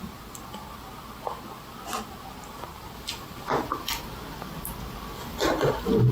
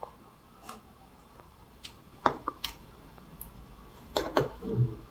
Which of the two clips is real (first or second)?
first